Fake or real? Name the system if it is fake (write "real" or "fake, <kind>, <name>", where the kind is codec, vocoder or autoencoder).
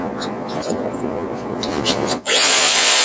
fake, vocoder, Vocos